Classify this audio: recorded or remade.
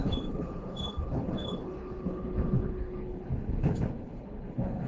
remade